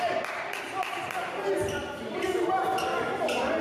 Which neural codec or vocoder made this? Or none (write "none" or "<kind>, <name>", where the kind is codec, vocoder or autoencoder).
none